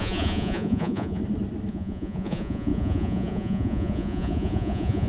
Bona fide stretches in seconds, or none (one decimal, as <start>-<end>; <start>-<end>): 1.2-1.7